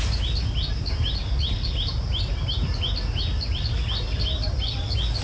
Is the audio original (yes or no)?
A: yes